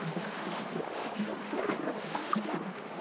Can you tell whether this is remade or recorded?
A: remade